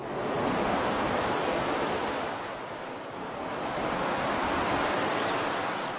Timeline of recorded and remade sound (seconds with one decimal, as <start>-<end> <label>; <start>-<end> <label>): 0.0-6.0 recorded